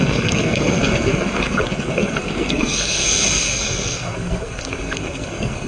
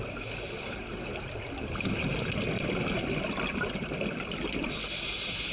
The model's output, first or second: first